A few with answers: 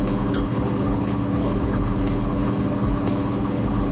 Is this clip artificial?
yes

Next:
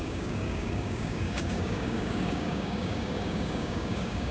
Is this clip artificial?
yes